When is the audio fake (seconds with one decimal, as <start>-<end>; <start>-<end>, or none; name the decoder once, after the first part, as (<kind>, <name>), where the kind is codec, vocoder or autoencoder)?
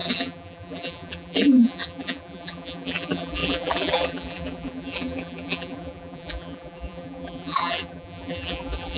0.0-9.0 (vocoder, BigVGAN v2)